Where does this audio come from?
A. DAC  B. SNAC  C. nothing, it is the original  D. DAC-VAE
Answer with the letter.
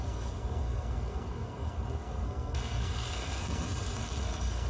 B